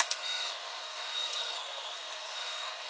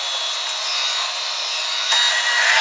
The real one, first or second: second